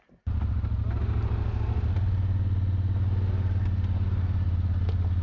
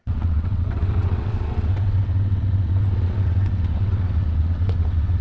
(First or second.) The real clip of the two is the first